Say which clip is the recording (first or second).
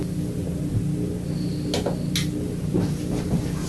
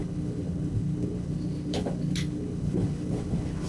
first